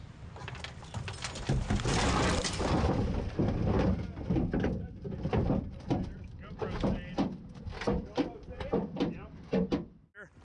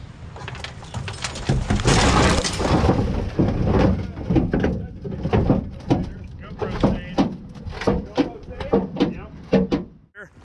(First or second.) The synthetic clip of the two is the first